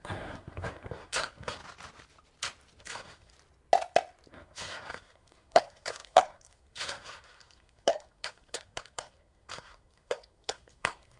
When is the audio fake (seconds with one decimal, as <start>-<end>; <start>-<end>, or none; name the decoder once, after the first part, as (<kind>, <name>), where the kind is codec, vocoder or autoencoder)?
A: 0.0-1.6 (codec, SNAC); 2.8-3.3; 4.3-11.2